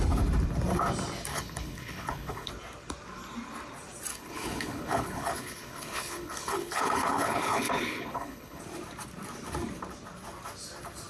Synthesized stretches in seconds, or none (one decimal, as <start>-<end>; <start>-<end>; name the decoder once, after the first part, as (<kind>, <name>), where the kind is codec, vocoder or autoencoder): 1.3-2.5 (codec, HILCodec); 4.1-8.6